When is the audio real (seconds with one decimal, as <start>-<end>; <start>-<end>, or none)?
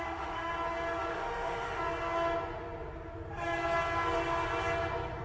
0.5-1.1; 1.8-5.2